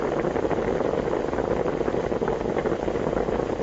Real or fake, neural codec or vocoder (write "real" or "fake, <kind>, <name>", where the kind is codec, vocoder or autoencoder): real